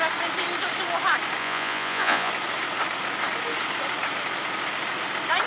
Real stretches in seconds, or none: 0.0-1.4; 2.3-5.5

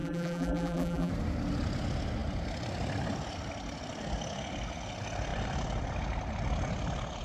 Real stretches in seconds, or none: 1.1-7.2

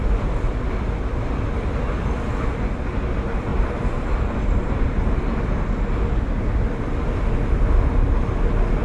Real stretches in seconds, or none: 0.0-3.5; 4.1-4.6; 5.2-8.8

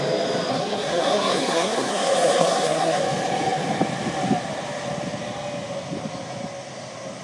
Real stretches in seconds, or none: 0.0-0.5; 3.0-7.2